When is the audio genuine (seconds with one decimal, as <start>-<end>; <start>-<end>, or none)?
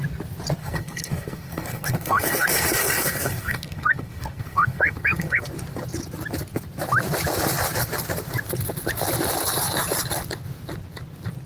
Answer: 0.0-0.6; 5.5-11.5